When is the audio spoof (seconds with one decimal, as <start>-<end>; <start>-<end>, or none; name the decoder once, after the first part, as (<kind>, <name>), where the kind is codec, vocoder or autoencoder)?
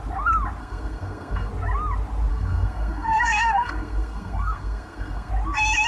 0.6-1.5 (codec, SNAC); 2.3-5.3